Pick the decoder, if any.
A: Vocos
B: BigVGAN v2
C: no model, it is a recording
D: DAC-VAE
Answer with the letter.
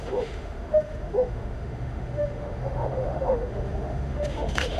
D